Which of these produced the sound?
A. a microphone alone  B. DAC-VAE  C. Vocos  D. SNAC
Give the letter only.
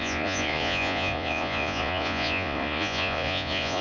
C